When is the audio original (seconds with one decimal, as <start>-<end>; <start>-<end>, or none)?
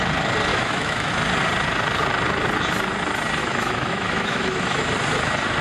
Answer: 0.0-0.5; 1.1-3.4; 4.8-5.6